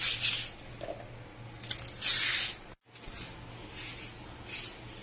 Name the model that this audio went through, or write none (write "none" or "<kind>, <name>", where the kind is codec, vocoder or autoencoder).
none